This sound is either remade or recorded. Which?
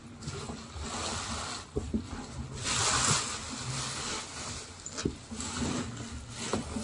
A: recorded